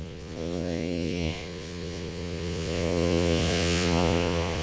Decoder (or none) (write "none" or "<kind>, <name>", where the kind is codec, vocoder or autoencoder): vocoder, Vocos